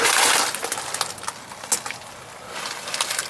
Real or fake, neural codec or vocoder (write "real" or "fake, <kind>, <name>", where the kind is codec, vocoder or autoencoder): real